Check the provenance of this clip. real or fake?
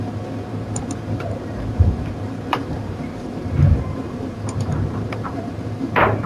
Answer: fake